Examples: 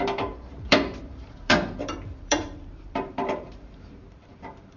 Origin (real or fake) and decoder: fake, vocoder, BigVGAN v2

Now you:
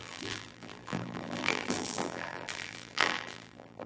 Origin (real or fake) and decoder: fake, vocoder, BigVGAN v2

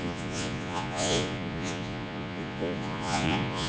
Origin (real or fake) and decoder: fake, vocoder, Vocos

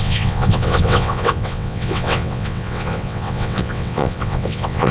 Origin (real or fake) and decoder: fake, vocoder, WaveNeXt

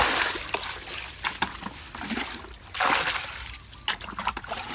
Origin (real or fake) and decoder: real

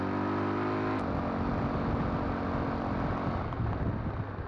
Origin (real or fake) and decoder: real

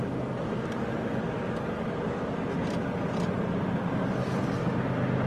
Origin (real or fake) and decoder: real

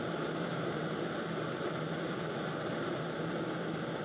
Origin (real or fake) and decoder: real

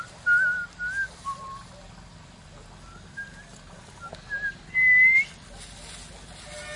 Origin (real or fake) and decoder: real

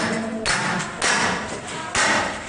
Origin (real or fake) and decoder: real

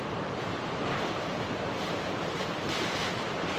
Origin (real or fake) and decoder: fake, vocoder, BigVGAN v2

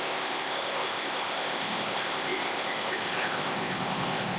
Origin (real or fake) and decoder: fake, codec, ZipCodec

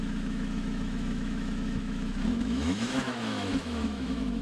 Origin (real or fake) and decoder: fake, autoencoder, DAC-VAE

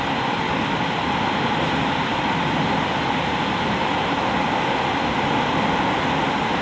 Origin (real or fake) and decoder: real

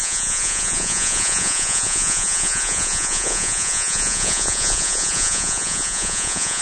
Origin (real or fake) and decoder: fake, vocoder, Vocos